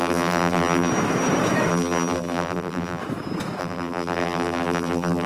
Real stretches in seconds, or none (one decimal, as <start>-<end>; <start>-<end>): 0.9-1.7; 3.0-3.6